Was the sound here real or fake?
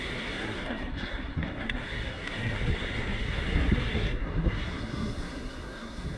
fake